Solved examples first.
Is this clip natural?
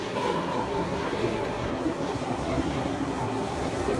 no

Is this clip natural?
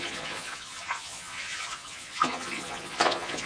no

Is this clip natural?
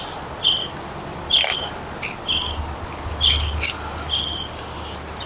yes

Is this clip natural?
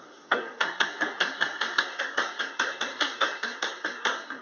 no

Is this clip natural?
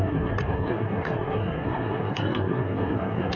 no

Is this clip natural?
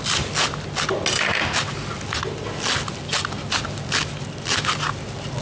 yes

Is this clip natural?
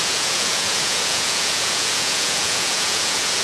no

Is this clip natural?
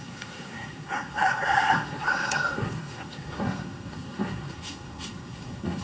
no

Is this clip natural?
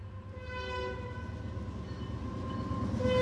yes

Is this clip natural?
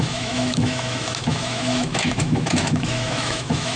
no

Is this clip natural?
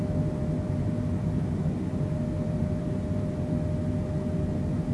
yes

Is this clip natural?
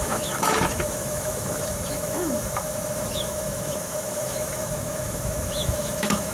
no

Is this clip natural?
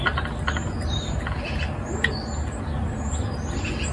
yes